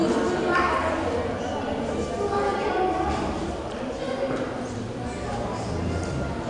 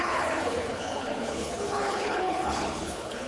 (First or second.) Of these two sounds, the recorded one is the first